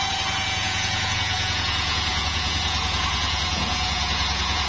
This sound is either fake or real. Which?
fake